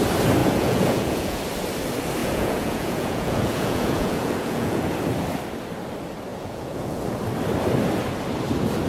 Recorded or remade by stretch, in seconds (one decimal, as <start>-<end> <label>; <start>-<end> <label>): 0.0-0.4 recorded; 0.4-1.4 remade; 1.4-2.2 recorded; 2.2-4.8 remade; 4.8-6.3 recorded; 6.3-7.0 remade; 7.0-8.9 recorded